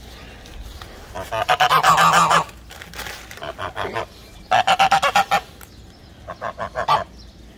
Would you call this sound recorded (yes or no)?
yes